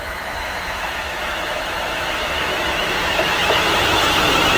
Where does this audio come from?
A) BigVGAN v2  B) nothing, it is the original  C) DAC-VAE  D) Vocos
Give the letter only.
C